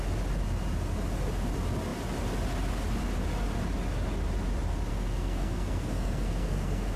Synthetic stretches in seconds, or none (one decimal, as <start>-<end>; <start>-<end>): 4.9-7.0